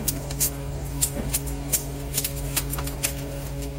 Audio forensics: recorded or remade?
remade